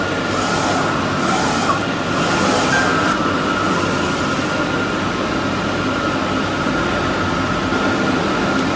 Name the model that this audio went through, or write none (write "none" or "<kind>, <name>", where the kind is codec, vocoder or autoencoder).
none